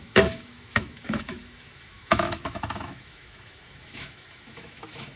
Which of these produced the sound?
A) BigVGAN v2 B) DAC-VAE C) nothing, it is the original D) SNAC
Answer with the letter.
B